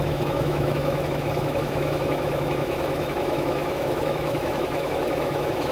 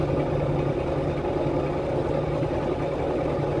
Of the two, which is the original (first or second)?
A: second